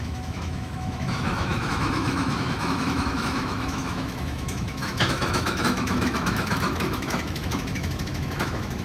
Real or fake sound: fake